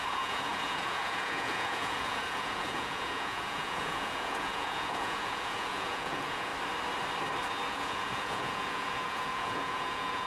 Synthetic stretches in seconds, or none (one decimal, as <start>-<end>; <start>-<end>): 0.0-6.5; 7.7-10.3